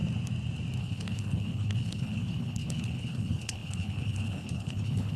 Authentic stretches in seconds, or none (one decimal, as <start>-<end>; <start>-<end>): 0.0-0.8